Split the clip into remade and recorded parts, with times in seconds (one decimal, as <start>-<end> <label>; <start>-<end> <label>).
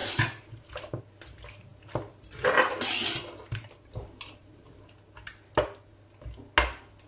0.0-1.0 remade; 1.0-7.1 recorded